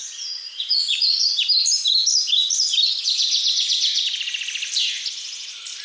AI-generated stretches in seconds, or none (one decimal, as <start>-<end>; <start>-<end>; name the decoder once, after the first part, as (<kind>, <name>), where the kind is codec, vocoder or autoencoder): 0.0-1.2 (vocoder, Vocos)